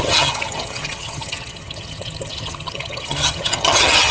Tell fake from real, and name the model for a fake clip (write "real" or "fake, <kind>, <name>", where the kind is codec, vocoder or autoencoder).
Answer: fake, vocoder, HiFi-GAN